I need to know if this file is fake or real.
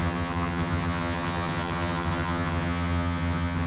fake